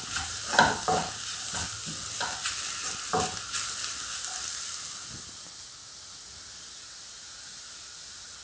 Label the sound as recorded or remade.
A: recorded